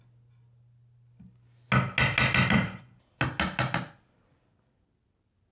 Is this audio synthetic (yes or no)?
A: no